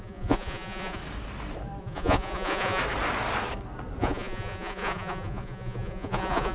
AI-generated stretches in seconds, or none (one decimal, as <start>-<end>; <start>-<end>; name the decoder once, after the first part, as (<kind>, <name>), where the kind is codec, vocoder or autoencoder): 0.0-1.0 (vocoder, Vocos); 1.8-2.8; 4.0-6.5